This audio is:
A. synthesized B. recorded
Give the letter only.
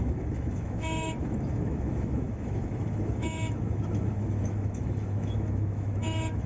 A